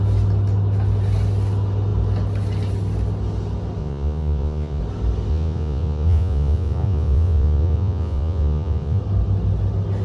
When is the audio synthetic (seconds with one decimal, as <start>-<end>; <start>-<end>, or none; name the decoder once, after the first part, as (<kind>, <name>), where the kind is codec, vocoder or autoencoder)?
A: 3.8-4.8 (vocoder, Vocos); 5.3-9.0